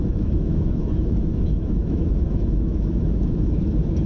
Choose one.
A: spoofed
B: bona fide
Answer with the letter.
A